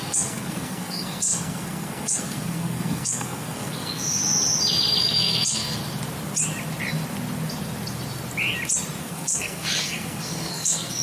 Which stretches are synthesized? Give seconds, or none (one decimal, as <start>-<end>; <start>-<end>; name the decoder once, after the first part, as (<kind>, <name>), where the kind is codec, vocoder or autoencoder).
0.0-4.2 (codec, SNAC); 5.0-5.8; 9.0-11.0

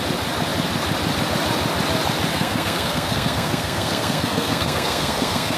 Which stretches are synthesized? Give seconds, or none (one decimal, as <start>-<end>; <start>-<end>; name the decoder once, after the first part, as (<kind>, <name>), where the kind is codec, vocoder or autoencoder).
2.3-5.6 (codec, SNAC)

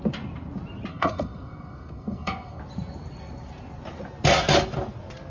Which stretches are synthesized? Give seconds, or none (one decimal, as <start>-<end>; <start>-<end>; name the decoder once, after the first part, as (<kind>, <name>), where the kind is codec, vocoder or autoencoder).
0.9-2.6 (codec, SNAC)